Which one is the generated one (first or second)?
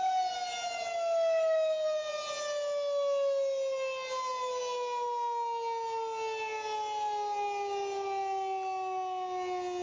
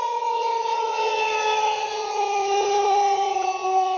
second